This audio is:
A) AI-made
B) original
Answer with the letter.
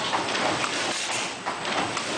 B